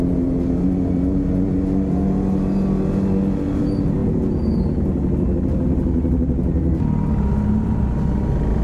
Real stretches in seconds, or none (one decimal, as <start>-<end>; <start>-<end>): 0.0-8.6